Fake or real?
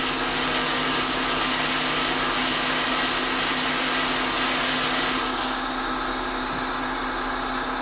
real